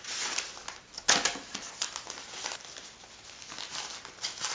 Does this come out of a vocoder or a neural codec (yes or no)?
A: no